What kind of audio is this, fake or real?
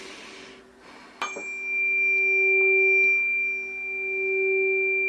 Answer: real